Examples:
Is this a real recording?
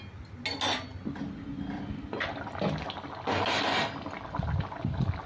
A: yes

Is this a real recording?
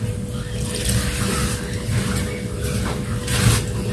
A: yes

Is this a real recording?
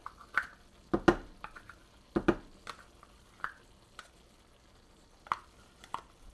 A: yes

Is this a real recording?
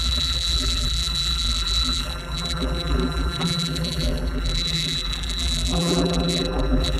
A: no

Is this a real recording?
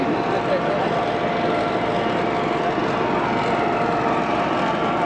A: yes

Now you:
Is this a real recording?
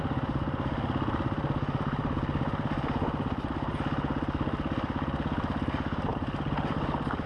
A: yes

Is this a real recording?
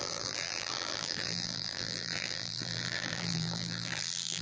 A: no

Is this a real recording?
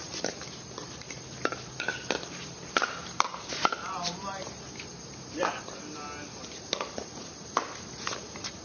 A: no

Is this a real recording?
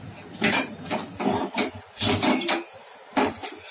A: no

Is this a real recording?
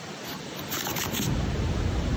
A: no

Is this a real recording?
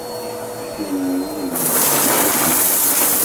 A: yes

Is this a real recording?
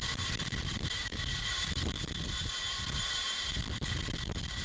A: no